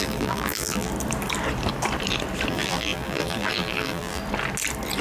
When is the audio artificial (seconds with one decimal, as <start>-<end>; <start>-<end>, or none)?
0.0-0.9; 2.5-4.2